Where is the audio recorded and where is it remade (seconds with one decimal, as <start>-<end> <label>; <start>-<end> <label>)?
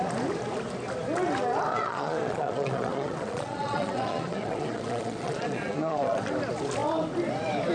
0.0-1.7 recorded; 1.7-6.3 remade; 6.3-7.7 recorded